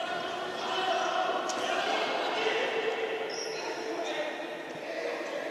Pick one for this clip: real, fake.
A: real